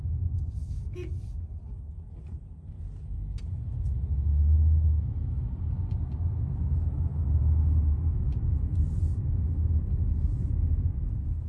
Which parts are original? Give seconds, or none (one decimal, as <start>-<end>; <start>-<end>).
0.0-0.6; 1.1-4.3; 5.3-11.5